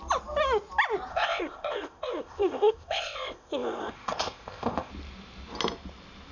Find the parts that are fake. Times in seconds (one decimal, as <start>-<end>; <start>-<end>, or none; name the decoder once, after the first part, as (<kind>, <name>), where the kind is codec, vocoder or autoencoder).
1.1-4.9 (codec, ZipCodec)

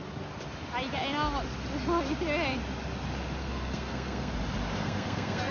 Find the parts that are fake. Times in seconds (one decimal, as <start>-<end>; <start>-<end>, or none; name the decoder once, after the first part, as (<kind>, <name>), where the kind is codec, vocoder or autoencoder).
3.4-4.3 (codec, SNAC); 4.8-5.5

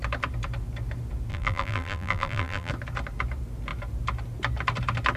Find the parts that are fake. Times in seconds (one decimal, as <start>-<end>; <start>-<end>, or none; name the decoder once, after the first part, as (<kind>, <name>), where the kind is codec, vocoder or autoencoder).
1.3-2.7 (vocoder, BigVGAN v2)

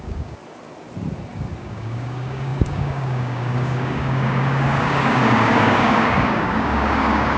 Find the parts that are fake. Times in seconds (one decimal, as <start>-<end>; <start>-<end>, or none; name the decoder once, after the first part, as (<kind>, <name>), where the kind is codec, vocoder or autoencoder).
0.0-0.4 (codec, DAC); 1.6-7.4